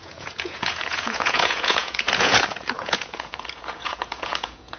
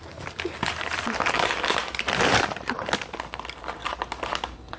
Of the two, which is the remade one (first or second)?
first